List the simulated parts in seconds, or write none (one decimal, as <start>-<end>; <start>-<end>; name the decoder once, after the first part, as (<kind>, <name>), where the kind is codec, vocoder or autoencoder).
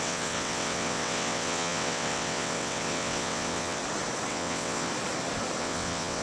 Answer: 0.0-3.8 (vocoder, WaveNeXt); 4.3-4.9; 5.6-6.2